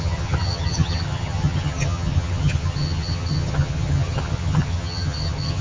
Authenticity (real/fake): fake